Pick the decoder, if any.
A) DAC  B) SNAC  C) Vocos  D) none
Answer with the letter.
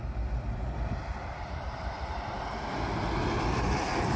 D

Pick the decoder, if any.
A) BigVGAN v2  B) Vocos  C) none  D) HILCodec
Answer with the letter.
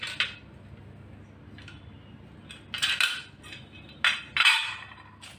C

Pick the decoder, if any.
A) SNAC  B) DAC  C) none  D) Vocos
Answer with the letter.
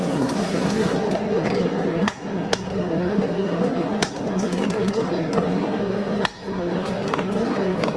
A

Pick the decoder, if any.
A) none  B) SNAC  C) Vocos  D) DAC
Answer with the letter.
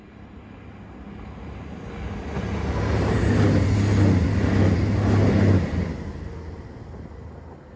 A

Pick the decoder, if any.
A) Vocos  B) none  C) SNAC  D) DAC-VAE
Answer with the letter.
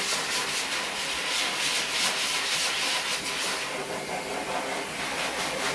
B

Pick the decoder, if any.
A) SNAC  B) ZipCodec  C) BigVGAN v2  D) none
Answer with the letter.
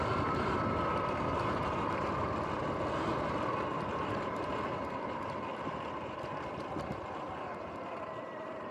D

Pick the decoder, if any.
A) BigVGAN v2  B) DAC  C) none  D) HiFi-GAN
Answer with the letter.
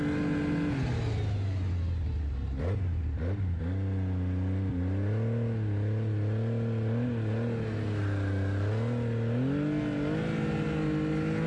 C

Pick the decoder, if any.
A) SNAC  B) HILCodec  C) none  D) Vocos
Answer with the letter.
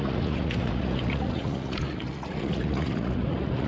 D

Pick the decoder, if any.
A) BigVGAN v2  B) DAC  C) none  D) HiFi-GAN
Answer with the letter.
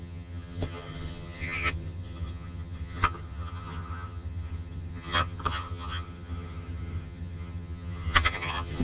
D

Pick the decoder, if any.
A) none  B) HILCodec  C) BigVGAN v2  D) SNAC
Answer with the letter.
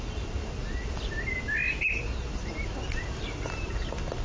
A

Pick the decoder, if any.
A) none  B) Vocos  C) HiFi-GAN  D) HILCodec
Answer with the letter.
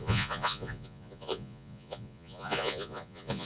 B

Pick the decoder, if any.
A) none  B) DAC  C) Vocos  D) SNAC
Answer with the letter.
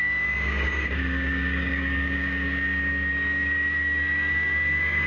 B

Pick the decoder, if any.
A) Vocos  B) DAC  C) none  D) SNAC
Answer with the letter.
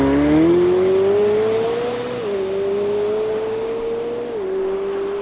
C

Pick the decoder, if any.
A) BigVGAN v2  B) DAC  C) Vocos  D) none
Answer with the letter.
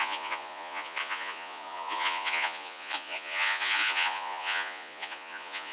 C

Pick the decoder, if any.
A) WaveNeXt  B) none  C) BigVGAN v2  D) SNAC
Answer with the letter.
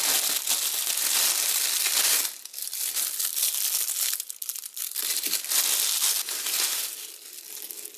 B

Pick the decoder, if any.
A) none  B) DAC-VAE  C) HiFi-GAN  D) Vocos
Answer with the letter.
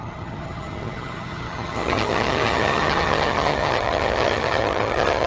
C